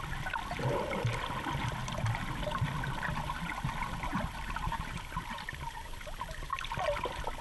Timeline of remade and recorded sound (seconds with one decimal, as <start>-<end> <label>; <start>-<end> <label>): 0.0-4.1 recorded; 4.1-6.5 remade; 6.5-7.4 recorded